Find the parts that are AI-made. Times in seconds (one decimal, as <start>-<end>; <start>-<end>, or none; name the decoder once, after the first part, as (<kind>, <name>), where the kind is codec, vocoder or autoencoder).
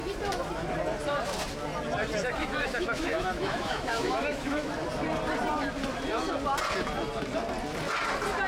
2.4-4.7 (autoencoder, DAC-VAE)